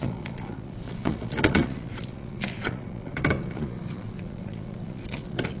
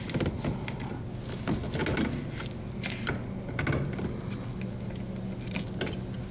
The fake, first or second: first